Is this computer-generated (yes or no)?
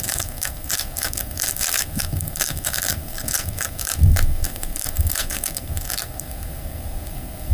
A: yes